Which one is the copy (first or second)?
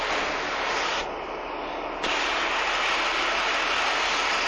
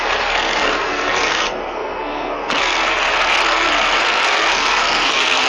second